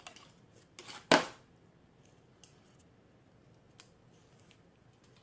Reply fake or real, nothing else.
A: real